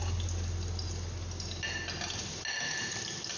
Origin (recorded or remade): recorded